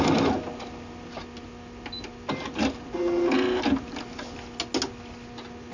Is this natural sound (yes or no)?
yes